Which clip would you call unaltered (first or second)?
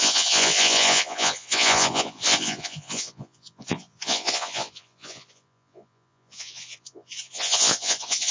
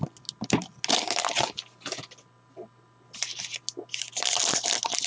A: second